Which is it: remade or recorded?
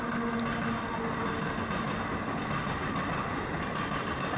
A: recorded